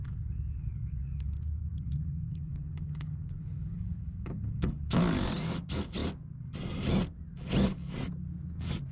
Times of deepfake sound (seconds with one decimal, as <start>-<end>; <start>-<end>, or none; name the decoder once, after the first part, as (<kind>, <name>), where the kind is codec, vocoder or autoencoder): 0.0-5.0 (codec, HILCodec)